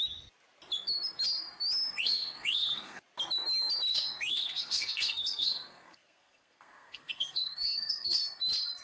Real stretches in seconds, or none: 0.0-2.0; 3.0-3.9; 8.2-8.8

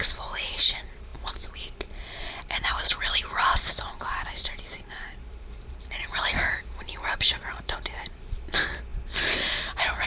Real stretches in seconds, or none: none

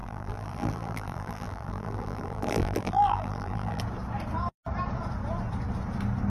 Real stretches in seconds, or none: 3.8-6.3

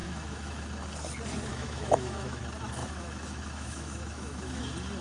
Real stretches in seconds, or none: 0.6-1.5; 2.4-2.8; 4.6-5.0

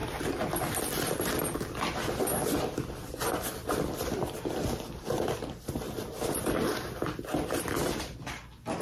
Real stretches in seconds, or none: 0.0-2.3; 6.7-8.8